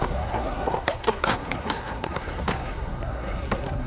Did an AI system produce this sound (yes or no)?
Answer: yes